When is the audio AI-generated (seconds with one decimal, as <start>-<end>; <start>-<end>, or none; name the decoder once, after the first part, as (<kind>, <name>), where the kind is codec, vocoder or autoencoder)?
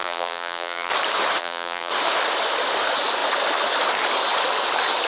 0.0-0.9 (vocoder, BigVGAN v2); 1.4-1.9